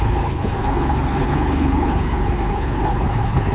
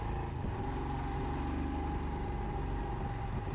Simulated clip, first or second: first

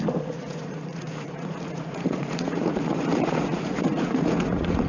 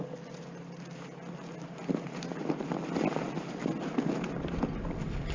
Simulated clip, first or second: first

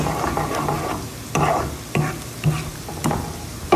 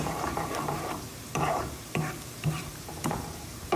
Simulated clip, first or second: second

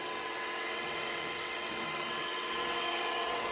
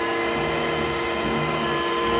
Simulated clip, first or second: first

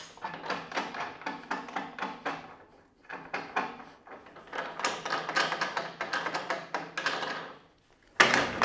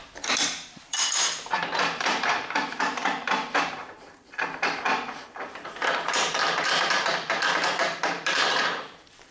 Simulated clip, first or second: second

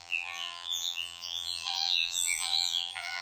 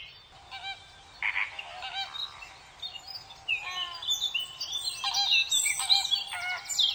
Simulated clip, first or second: first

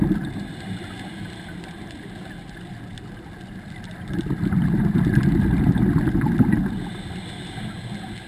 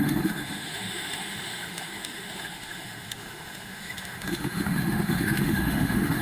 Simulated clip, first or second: second